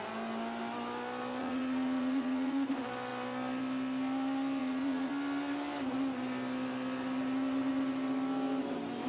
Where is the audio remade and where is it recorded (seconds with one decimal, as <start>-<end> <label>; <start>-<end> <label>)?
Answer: 0.0-1.4 recorded; 1.4-2.7 remade; 2.7-4.6 recorded; 4.6-5.1 remade; 5.1-9.1 recorded